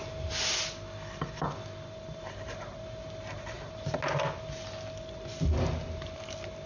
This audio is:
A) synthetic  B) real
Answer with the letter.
B